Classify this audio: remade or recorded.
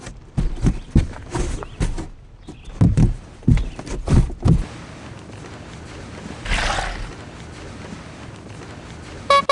recorded